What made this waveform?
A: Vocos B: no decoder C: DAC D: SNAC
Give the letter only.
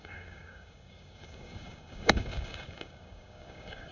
C